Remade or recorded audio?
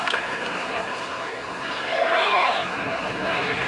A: remade